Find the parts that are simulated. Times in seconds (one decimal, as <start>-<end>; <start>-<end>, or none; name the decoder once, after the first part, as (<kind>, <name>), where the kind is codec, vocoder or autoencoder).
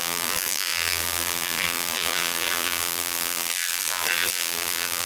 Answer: 0.0-5.1 (vocoder, BigVGAN v2)